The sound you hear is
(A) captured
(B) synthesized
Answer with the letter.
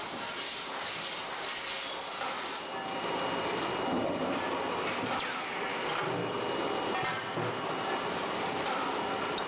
A